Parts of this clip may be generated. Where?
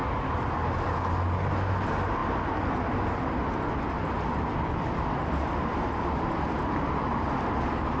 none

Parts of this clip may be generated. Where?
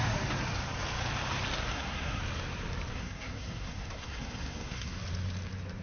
1.7-2.2 (codec, SNAC); 2.9-5.0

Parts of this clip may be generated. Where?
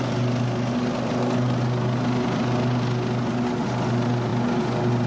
none